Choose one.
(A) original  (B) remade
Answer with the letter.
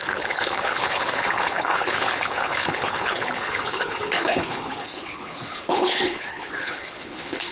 B